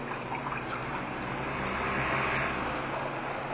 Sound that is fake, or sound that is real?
real